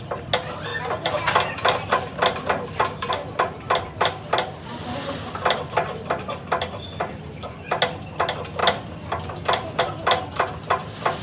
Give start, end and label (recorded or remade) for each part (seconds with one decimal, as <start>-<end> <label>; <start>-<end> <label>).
0.0-11.2 recorded